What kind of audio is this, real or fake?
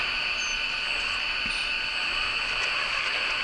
real